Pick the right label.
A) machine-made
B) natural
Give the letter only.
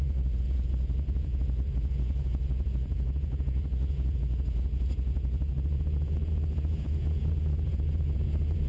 A